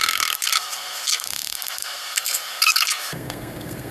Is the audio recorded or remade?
remade